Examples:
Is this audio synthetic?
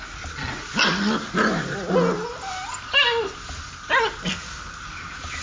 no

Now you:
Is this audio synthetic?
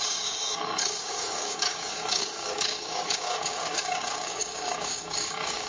yes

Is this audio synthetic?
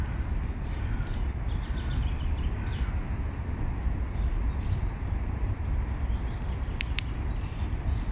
no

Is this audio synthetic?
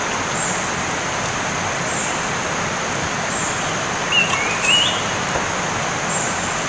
no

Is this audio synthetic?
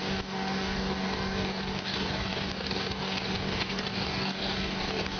yes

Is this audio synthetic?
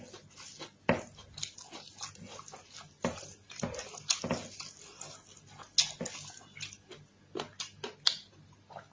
no